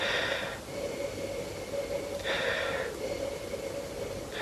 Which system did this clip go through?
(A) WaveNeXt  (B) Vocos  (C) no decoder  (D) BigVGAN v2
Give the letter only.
C